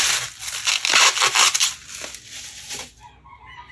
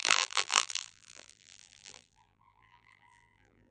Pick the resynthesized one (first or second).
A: second